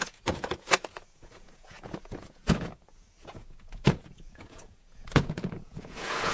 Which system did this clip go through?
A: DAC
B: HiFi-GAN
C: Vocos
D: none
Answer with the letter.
C